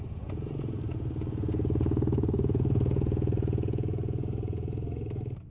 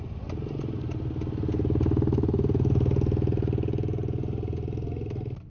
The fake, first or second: first